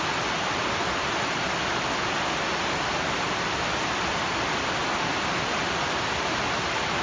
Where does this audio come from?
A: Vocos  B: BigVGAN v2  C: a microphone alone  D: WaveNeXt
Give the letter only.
C